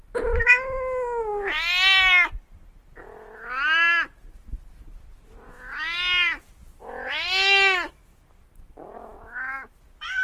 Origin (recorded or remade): recorded